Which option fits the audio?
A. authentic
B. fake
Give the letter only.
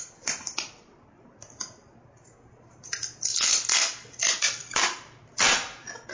A